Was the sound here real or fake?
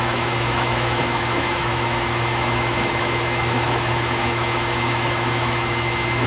fake